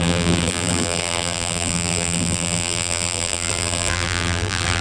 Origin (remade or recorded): remade